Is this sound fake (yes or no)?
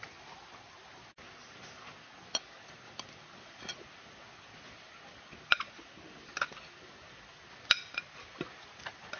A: no